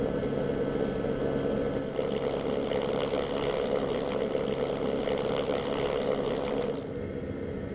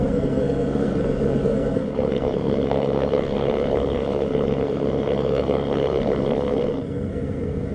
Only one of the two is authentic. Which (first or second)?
first